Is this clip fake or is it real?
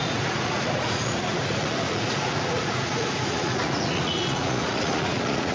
fake